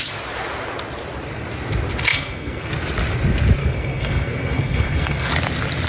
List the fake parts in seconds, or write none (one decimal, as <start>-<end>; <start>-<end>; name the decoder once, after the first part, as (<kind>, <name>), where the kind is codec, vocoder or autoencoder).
2.1-2.7 (codec, SNAC); 3.6-5.3